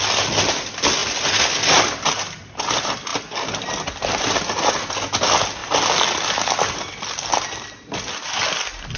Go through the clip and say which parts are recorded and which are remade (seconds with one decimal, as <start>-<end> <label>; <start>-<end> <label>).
0.0-9.0 recorded